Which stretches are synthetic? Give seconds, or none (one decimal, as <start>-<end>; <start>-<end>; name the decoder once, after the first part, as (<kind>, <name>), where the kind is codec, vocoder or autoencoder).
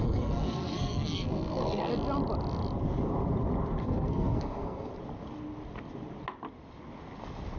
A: 0.0-1.9 (codec, SNAC); 3.8-4.9